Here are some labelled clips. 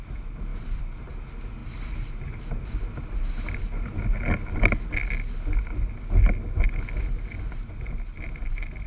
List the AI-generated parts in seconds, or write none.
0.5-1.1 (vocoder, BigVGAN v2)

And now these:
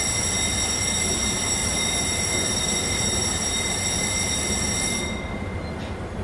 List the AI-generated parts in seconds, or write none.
1.6-3.4 (vocoder, BigVGAN v2)

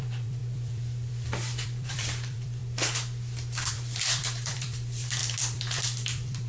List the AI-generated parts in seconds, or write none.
0.0-2.6 (vocoder, BigVGAN v2); 3.7-6.5

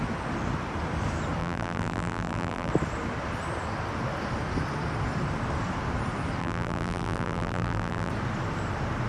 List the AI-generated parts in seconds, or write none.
1.4-2.7 (vocoder, BigVGAN v2); 6.4-8.1

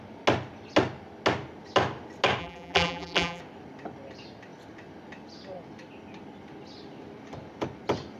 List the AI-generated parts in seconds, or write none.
2.4-3.4 (vocoder, BigVGAN v2)